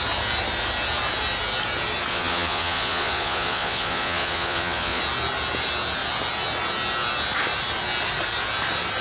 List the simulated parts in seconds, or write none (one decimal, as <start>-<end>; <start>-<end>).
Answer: 2.1-5.0